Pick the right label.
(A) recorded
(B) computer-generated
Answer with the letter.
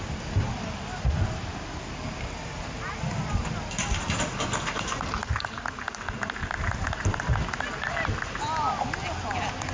A